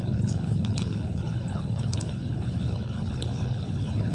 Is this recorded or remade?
remade